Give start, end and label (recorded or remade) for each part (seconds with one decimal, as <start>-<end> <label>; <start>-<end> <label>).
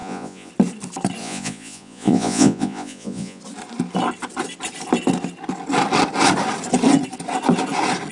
0.0-0.5 remade; 0.5-1.2 recorded; 1.2-3.4 remade; 3.4-8.1 recorded